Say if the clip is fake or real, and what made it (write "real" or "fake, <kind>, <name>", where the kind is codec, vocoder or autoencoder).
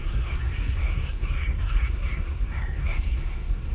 fake, codec, SNAC